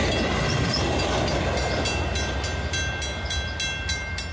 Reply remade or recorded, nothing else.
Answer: recorded